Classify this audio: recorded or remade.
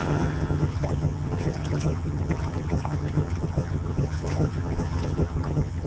remade